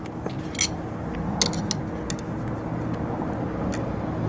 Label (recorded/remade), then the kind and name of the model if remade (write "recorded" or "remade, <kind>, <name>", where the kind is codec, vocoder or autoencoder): recorded